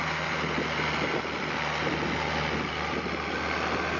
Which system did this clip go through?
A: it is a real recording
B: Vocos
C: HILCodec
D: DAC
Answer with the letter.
A